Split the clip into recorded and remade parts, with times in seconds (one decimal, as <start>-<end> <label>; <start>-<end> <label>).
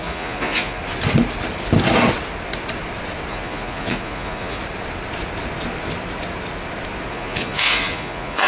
0.0-0.8 remade; 0.8-3.3 recorded; 3.3-4.6 remade; 4.6-7.1 recorded; 7.1-8.5 remade